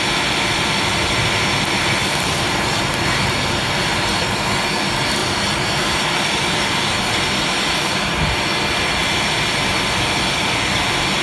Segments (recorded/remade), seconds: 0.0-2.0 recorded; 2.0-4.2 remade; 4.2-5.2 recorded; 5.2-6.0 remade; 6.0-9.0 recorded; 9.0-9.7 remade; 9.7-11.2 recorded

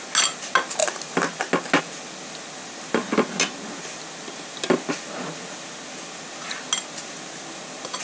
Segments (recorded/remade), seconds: 0.0-8.0 recorded

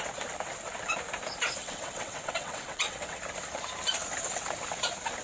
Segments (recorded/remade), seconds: 0.0-1.6 recorded; 1.6-3.2 remade; 3.2-5.2 recorded

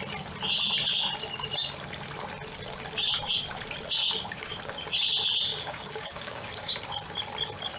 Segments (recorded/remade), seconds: 0.0-4.0 recorded; 4.0-4.6 remade; 4.6-5.5 recorded; 5.5-6.7 remade; 6.7-7.8 recorded